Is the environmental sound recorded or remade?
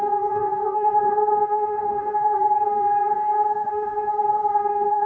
remade